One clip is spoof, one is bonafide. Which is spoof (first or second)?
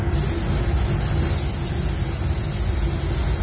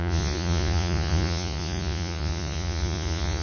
second